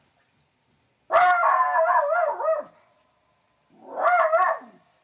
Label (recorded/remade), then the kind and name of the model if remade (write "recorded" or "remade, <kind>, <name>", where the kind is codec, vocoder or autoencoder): recorded